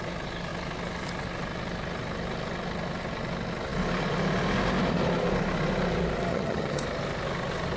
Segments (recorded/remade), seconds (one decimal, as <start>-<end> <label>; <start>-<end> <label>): 0.0-6.3 recorded; 6.3-6.8 remade; 6.8-7.8 recorded